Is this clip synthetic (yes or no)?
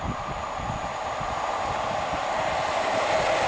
no